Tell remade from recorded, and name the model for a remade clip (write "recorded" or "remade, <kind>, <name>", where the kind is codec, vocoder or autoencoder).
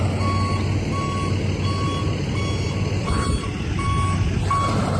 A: recorded